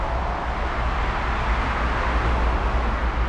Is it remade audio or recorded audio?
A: recorded